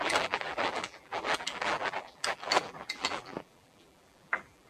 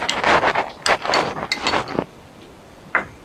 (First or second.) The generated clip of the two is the first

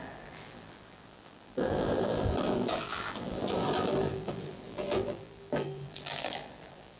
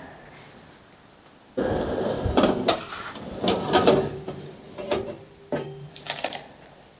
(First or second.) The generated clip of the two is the first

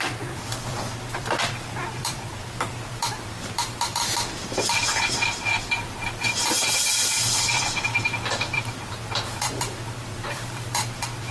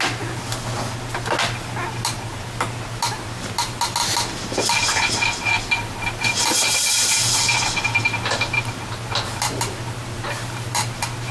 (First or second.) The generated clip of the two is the first